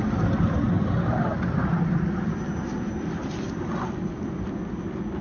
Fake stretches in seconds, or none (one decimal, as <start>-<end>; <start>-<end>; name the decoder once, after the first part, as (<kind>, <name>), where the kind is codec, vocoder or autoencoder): none